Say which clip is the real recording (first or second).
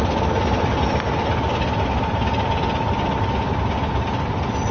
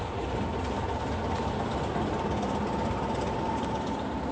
first